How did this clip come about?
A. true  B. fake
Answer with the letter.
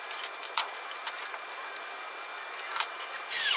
A